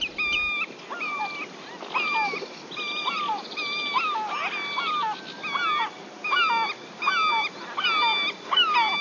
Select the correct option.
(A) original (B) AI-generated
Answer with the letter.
A